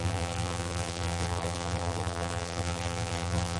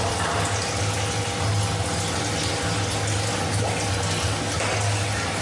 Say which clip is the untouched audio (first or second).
second